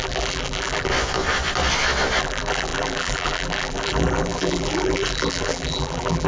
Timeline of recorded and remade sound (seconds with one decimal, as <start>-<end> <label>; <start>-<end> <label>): 0.0-0.9 remade; 0.9-2.2 recorded; 2.2-6.3 remade